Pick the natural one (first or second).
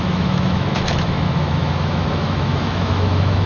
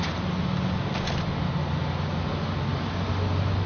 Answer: second